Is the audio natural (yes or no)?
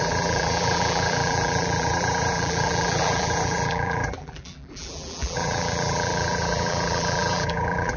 no